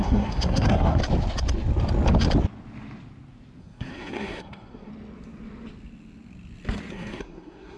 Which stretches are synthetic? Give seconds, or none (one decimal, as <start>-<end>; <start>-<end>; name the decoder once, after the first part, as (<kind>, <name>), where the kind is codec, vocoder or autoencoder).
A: 0.0-1.0 (codec, SNAC); 3.6-4.9; 6.9-7.8